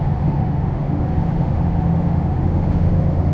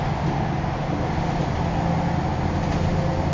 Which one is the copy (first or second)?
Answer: first